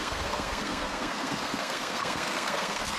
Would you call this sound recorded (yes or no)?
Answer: no